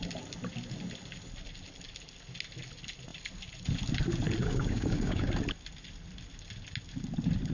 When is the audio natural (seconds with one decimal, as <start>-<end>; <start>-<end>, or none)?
0.0-4.4; 5.3-7.5